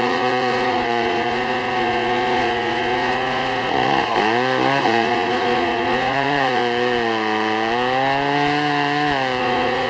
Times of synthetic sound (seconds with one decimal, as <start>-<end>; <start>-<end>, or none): 0.0-4.1; 4.8-6.6; 9.4-9.9